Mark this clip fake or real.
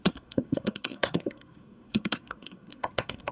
fake